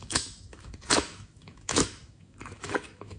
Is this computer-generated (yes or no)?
yes